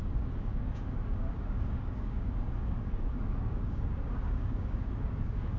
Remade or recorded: remade